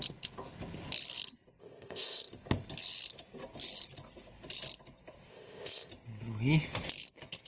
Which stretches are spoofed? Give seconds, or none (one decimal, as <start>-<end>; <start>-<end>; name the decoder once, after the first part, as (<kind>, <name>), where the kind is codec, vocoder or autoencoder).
1.6-2.3 (codec, ZipCodec); 5.3-5.9